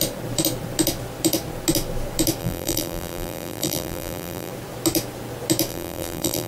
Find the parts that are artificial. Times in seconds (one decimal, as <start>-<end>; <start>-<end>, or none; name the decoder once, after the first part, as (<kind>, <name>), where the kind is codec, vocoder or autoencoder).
2.4-4.5 (vocoder, BigVGAN v2); 5.7-6.5